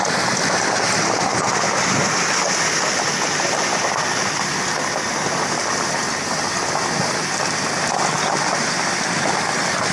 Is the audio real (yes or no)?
yes